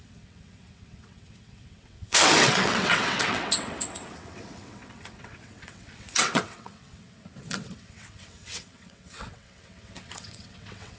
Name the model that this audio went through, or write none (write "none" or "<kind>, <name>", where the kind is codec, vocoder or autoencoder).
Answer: vocoder, WaveNeXt